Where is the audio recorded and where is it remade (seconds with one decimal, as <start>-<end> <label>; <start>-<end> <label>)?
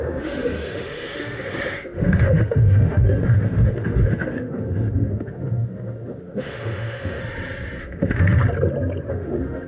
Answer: 0.0-7.2 remade; 7.2-7.8 recorded; 7.8-8.4 remade; 8.4-9.1 recorded; 9.1-9.7 remade